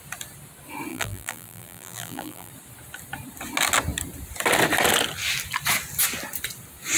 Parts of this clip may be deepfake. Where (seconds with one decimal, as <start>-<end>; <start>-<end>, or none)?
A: 0.9-2.5